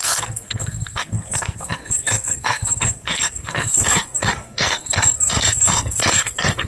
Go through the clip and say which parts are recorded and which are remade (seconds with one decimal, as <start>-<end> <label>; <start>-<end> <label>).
0.0-6.7 remade